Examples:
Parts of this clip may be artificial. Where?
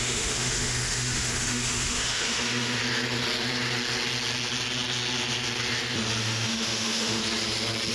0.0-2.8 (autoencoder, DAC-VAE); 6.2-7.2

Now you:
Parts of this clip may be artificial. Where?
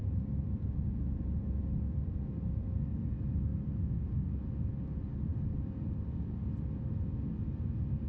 5.3-7.0 (vocoder, BigVGAN v2)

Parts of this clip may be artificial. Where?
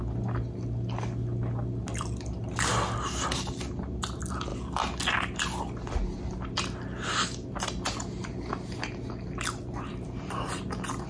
none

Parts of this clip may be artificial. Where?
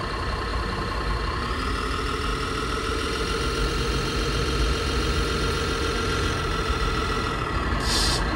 none